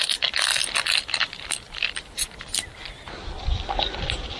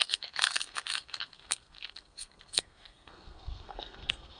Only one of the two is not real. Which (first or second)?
second